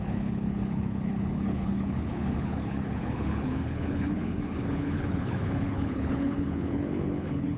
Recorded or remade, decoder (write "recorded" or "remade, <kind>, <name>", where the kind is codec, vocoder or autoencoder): remade, codec, HILCodec